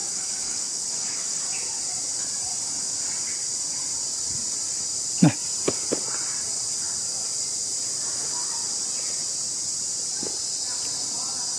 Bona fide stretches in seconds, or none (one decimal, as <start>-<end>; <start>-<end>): 1.4-11.6